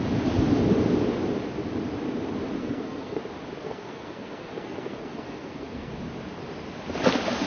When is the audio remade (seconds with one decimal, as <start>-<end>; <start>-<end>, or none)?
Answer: 2.6-3.2; 3.6-5.9